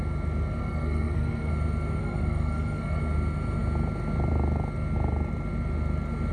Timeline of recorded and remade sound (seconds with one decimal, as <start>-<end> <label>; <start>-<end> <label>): 0.0-0.6 recorded; 0.6-1.5 remade; 1.5-2.0 recorded; 2.0-3.0 remade; 3.0-6.3 recorded